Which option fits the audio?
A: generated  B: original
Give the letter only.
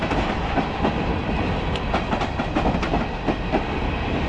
B